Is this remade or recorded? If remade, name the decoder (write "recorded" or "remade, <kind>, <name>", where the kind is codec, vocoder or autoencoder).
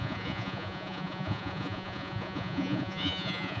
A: remade, vocoder, Vocos